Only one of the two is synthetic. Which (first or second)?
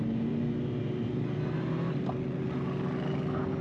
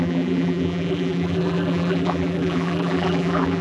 second